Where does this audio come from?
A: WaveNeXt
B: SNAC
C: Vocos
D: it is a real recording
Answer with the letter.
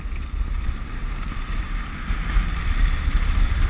D